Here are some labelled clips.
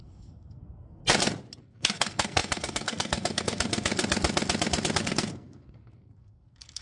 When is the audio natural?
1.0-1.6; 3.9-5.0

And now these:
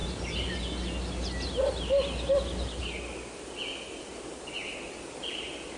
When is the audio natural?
0.0-5.8

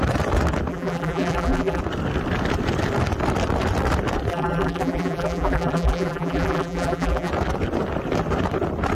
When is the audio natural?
0.0-0.7; 1.8-4.3; 7.3-8.9

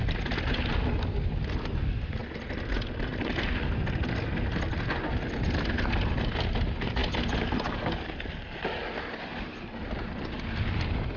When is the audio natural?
0.0-11.2

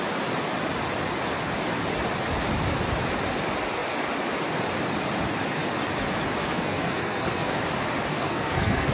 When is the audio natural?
0.0-6.4; 7.5-8.1

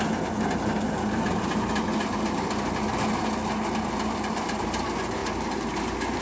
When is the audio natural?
0.0-6.2

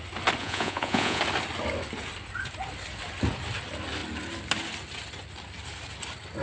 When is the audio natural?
0.0-0.4; 1.2-6.4

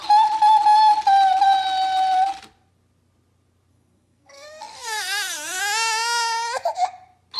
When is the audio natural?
0.0-3.7; 5.6-7.4